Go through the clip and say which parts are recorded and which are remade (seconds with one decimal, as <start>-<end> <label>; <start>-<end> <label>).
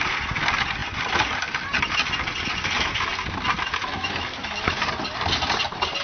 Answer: 0.0-3.8 recorded; 3.8-4.9 remade; 4.9-6.0 recorded